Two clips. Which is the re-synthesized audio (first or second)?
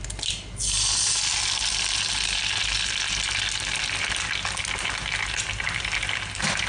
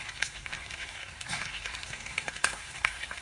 second